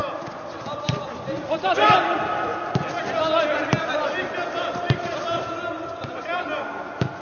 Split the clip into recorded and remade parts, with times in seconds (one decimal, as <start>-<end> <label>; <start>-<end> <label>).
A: 0.0-0.5 recorded; 0.5-2.5 remade; 2.5-6.7 recorded; 6.7-7.2 remade